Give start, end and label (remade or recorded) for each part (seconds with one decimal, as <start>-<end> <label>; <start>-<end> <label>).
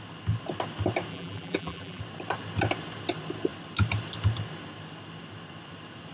0.0-1.1 recorded; 1.1-2.0 remade; 2.0-6.1 recorded